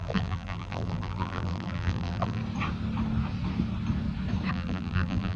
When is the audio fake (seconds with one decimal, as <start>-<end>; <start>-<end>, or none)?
0.0-2.4; 4.5-5.4